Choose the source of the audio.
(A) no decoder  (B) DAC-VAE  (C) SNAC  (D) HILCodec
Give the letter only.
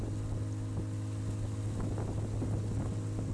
A